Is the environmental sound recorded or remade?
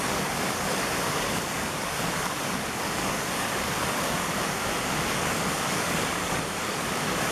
remade